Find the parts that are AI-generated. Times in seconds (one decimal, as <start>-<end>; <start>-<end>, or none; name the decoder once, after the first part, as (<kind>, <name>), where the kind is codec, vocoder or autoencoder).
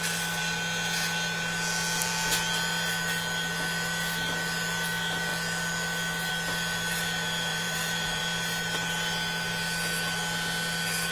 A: 7.5-8.2 (vocoder, BigVGAN v2)